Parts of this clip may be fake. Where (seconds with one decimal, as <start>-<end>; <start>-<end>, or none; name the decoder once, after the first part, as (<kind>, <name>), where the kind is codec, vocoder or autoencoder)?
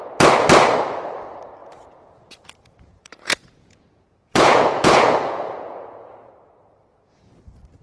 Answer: 1.6-6.3 (vocoder, Vocos)